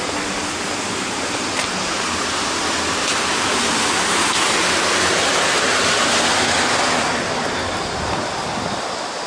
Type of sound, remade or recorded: recorded